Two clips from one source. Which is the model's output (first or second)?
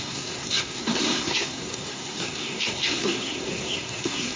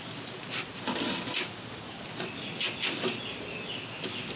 first